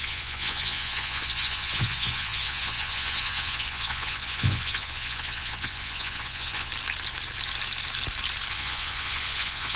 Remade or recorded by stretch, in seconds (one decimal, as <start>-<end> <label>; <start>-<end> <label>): 0.0-6.7 remade; 6.7-8.5 recorded; 8.5-9.8 remade